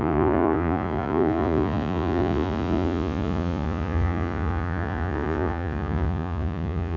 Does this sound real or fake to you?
fake